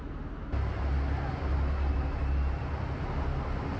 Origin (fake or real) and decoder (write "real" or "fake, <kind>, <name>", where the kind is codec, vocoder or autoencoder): real